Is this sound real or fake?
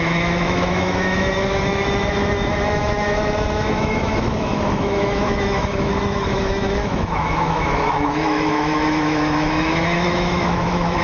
fake